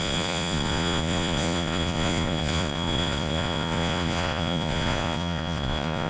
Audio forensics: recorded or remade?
remade